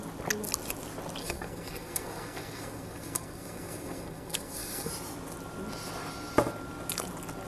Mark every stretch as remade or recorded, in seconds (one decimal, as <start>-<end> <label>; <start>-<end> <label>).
0.0-1.2 recorded; 1.2-4.9 remade; 4.9-7.5 recorded